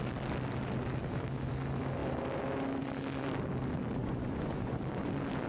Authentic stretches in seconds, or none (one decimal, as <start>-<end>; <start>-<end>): 0.0-4.0; 4.8-5.5